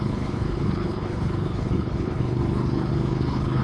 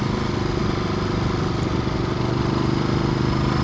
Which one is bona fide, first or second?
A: second